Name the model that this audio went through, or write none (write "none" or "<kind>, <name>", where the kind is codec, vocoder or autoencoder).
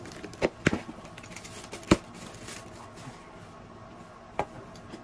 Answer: none